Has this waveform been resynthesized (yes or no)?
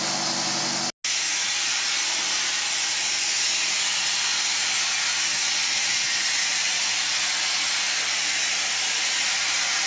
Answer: no